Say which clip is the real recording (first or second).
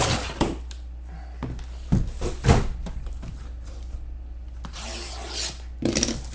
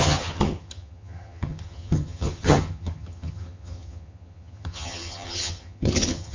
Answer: first